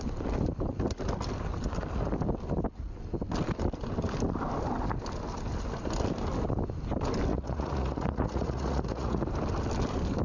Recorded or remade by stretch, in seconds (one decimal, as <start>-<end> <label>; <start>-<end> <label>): 0.0-7.3 recorded; 7.3-9.2 remade; 9.2-10.2 recorded